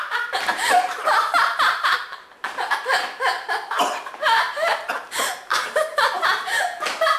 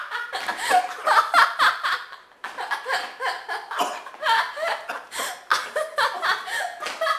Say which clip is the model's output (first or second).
first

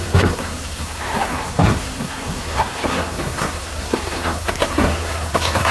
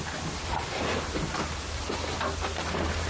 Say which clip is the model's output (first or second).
first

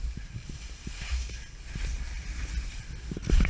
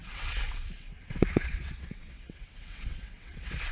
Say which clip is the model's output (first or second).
second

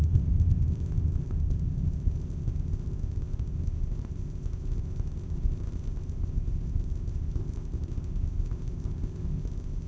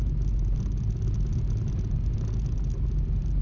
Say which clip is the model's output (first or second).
first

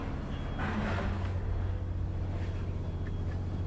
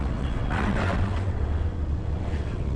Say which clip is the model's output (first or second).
second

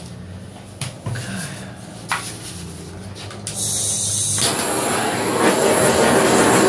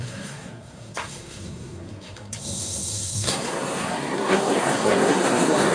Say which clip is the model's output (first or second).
second